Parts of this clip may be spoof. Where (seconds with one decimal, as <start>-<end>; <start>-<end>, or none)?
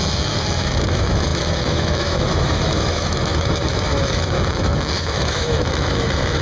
0.0-6.4